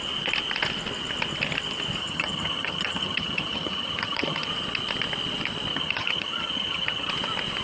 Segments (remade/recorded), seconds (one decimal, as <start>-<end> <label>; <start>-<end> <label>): 0.0-2.0 recorded; 2.0-4.5 remade; 4.5-5.7 recorded; 5.7-7.1 remade; 7.1-7.6 recorded